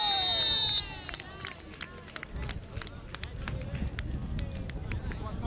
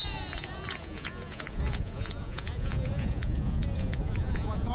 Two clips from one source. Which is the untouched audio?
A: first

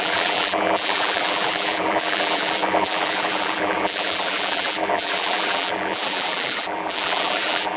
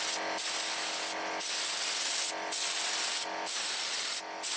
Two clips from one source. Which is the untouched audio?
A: second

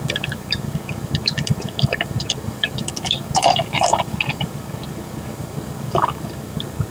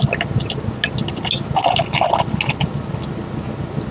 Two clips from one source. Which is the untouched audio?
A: second